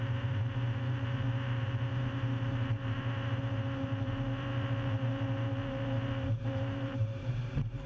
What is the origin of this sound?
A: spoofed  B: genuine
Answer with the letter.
A